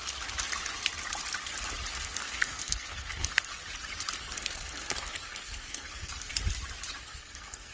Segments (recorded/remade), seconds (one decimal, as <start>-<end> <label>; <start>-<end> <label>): 0.0-1.9 recorded; 1.9-3.5 remade; 3.5-4.2 recorded; 4.2-6.3 remade; 6.3-7.0 recorded; 7.0-7.7 remade

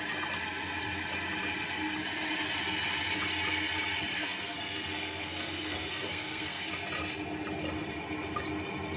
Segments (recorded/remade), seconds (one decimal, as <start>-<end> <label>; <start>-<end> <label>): 0.0-4.1 recorded; 4.1-6.7 remade; 6.7-9.0 recorded

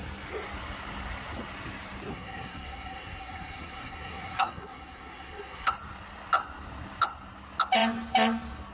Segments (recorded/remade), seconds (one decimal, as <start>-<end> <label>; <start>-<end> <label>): 0.0-2.1 recorded; 2.1-5.7 remade; 5.7-8.7 recorded

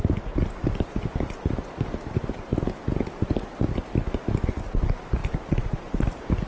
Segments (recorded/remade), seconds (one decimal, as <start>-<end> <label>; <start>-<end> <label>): 0.0-6.5 recorded

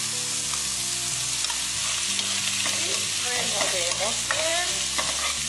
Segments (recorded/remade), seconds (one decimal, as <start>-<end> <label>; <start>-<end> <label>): 0.0-5.5 recorded

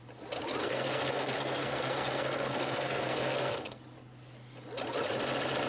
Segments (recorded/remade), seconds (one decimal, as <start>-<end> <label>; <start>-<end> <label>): 0.0-0.6 recorded; 0.6-3.8 remade; 3.8-5.7 recorded